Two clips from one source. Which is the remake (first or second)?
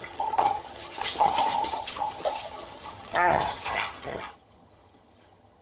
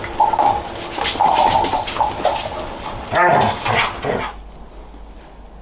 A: first